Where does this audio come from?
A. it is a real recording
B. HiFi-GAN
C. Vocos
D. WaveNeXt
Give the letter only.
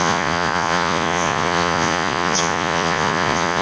C